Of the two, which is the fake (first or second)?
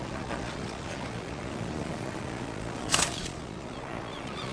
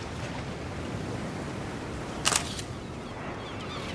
first